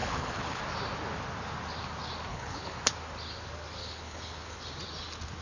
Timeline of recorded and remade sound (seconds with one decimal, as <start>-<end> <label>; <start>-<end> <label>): 0.0-0.6 remade; 0.6-2.3 recorded; 2.3-2.8 remade; 2.8-3.8 recorded; 3.8-4.6 remade; 4.6-5.4 recorded